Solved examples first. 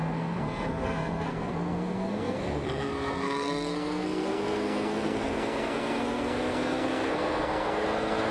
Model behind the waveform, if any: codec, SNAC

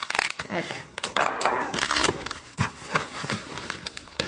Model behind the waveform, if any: codec, SNAC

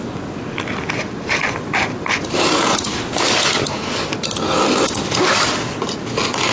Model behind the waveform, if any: none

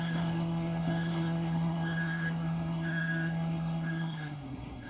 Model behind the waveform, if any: codec, SNAC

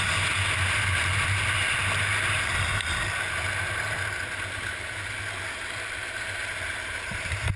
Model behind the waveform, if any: none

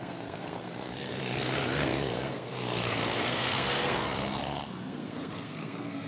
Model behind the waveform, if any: codec, SNAC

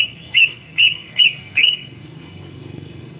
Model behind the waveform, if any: codec, SNAC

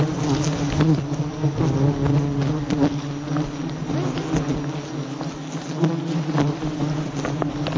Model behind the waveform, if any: none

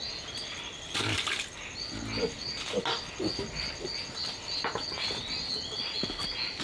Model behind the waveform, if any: none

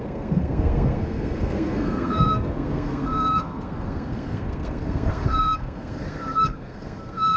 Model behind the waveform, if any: codec, SNAC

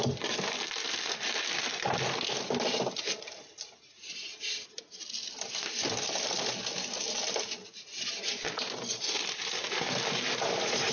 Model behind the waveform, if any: none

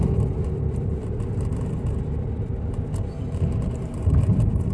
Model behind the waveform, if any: none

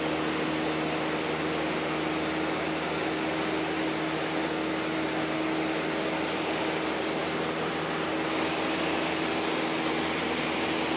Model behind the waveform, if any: none